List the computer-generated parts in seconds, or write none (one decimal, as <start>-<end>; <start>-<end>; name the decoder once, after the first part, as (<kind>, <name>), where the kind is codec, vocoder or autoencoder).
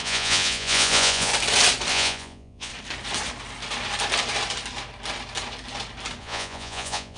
0.0-1.3 (vocoder, Vocos); 1.9-2.7; 6.2-7.2